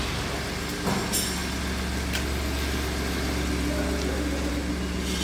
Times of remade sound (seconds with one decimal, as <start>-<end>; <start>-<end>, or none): none

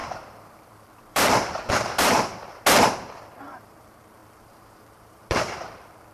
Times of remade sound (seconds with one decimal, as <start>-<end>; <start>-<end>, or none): 0.0-2.3; 3.4-6.1

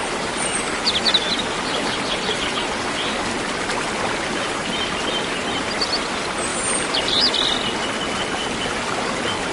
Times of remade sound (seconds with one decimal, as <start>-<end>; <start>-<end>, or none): 0.0-0.7; 6.5-7.2

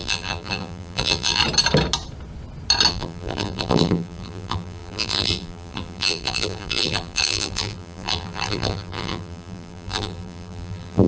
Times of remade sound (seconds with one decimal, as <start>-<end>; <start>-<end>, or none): 0.0-1.4; 2.9-11.1

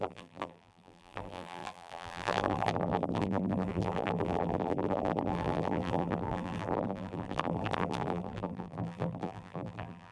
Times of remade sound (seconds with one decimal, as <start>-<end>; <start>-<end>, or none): 0.0-10.1

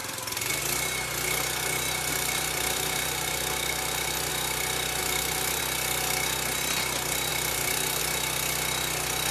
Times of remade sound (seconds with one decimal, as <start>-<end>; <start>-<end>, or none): 0.0-0.6; 2.1-4.3; 5.0-5.6; 7.3-8.0

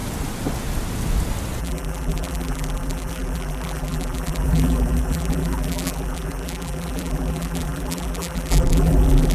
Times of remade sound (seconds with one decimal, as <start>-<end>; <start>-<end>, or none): 1.6-9.3

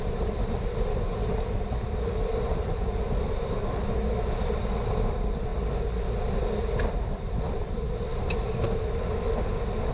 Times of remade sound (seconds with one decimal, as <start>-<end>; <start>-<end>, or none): 0.0-5.5; 6.6-8.1